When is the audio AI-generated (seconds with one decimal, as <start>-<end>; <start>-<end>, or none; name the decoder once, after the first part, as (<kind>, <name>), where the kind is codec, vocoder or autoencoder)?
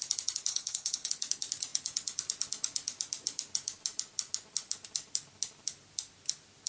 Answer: 0.5-1.1 (codec, SNAC)